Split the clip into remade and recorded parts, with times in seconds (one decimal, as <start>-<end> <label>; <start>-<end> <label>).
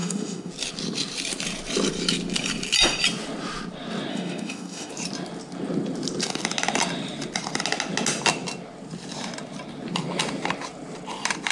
0.0-0.5 remade; 0.5-4.1 recorded; 4.1-4.9 remade; 4.9-11.5 recorded